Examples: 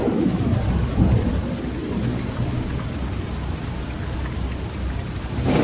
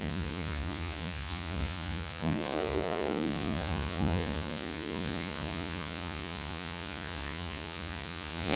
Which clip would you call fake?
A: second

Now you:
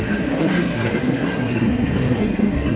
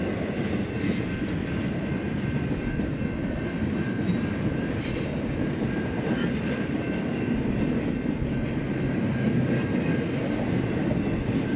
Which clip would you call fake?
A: first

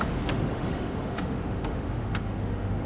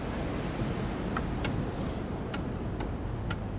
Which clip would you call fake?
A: first